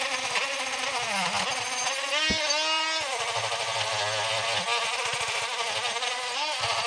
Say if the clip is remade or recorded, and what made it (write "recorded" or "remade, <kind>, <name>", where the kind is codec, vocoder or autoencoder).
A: recorded